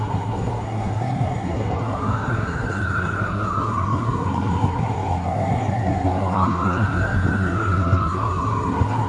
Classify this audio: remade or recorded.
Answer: remade